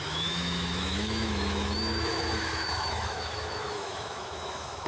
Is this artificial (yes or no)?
yes